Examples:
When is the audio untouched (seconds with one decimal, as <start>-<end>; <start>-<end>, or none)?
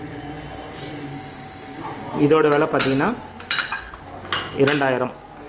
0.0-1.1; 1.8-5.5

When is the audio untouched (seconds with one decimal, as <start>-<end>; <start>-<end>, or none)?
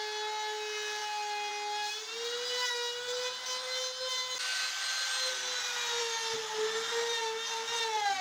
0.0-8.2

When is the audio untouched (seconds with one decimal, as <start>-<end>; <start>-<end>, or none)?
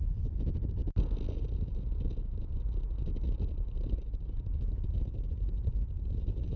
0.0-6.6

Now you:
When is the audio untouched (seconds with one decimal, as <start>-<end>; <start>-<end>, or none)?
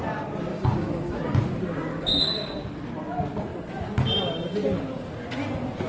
0.0-0.5; 1.2-1.9; 2.5-5.9